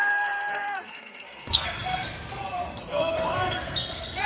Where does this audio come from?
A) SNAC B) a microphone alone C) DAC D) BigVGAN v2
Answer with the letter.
A